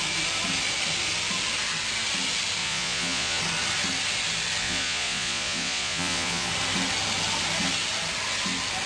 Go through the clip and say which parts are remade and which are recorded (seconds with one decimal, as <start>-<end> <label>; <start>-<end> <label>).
0.0-2.6 recorded; 2.6-3.4 remade; 3.4-4.6 recorded; 4.6-6.5 remade; 6.5-8.9 recorded